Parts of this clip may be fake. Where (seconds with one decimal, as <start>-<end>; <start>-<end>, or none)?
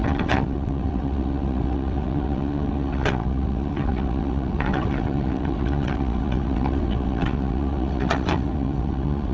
0.0-9.3